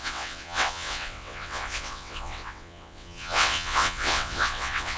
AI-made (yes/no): yes